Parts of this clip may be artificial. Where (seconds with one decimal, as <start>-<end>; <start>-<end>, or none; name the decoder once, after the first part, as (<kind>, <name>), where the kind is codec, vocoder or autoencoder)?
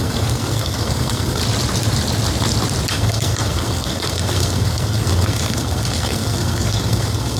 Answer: 0.0-1.4 (codec, SNAC); 2.9-7.4